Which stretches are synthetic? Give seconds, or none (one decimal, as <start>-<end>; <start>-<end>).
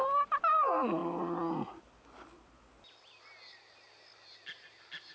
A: none